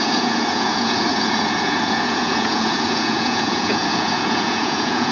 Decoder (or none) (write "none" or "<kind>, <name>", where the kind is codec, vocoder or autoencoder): vocoder, Vocos